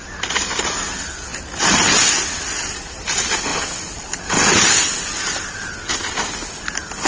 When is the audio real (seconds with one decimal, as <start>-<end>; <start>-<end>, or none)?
0.0-7.1